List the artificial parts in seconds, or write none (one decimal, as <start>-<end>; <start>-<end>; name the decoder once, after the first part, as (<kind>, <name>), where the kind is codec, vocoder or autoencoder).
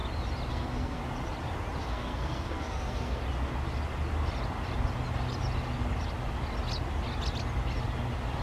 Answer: 0.5-1.0 (codec, SNAC); 1.8-3.2